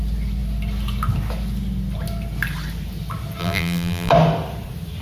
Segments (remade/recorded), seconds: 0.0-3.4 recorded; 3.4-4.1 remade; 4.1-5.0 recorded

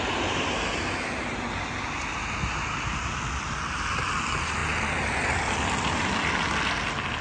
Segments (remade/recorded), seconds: 0.0-7.2 recorded